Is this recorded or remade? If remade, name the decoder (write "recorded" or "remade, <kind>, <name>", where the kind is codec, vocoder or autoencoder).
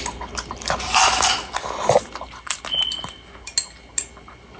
recorded